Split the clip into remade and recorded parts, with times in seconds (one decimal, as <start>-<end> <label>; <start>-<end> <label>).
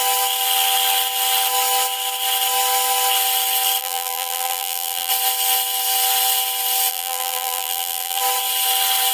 0.0-3.8 recorded; 3.8-5.1 remade; 5.1-6.9 recorded; 6.9-8.2 remade; 8.2-9.1 recorded